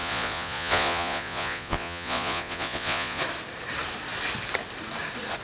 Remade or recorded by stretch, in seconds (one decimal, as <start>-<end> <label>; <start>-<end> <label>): 0.0-3.2 remade; 3.2-5.4 recorded

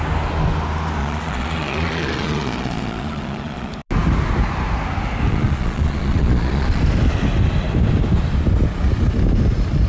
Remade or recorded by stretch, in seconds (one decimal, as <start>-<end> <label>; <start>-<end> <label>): 0.0-1.0 recorded; 1.0-3.7 remade; 3.7-5.3 recorded; 5.3-6.8 remade; 6.8-9.9 recorded

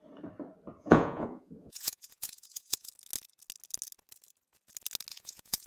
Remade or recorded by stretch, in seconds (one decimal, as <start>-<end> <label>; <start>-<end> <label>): 0.0-0.8 recorded; 0.8-2.9 remade; 2.9-5.1 recorded; 5.1-5.7 remade